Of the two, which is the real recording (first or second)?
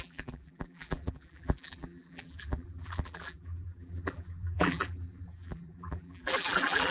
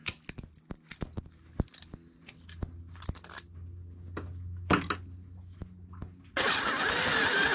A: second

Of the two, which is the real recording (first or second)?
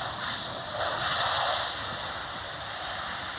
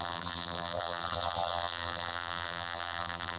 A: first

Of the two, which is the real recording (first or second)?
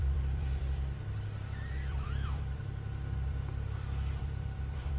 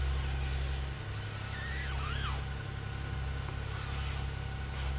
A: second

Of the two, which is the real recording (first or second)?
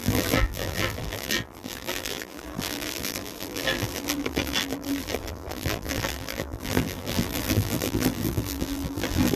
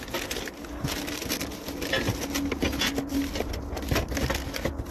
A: second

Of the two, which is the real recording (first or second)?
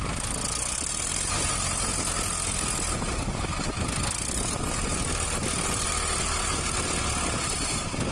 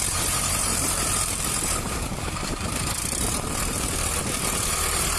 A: first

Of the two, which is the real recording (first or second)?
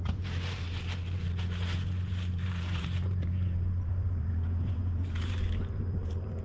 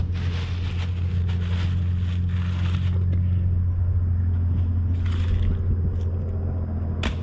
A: second